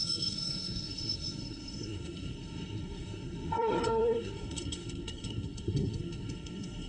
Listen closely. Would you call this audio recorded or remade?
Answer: remade